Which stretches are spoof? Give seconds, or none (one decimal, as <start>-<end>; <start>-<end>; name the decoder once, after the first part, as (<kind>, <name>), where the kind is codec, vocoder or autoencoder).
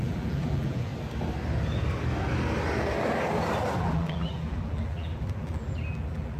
0.0-0.9 (vocoder, BigVGAN v2); 3.8-6.4